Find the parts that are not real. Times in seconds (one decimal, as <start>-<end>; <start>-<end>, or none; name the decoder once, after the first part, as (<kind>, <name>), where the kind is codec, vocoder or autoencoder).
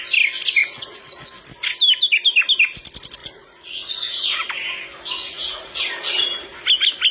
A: 0.6-1.3 (vocoder, Vocos); 3.2-4.5; 5.2-5.8